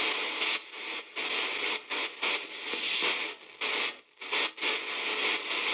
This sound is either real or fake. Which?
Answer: real